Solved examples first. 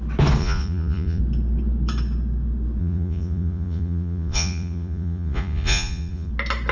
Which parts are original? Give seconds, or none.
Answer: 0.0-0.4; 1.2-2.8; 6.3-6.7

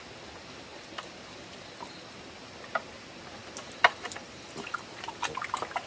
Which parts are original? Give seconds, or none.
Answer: 0.0-5.9